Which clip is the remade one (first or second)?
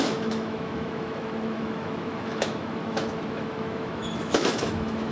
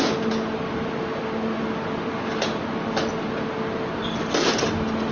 first